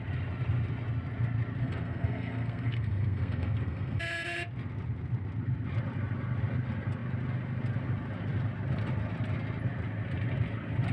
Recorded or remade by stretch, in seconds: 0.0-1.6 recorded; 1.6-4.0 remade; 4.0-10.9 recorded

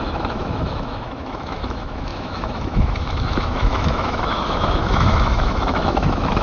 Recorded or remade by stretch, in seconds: 0.0-6.4 remade